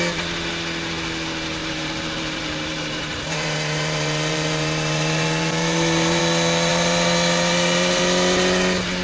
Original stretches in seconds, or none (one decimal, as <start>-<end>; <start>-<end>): 0.0-1.6; 6.2-6.7; 8.0-9.0